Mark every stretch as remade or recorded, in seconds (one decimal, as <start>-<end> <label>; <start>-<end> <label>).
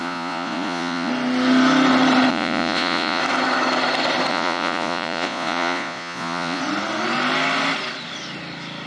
0.0-1.1 remade; 1.1-2.3 recorded; 2.3-3.2 remade; 3.2-4.3 recorded; 4.3-6.6 remade; 6.6-8.9 recorded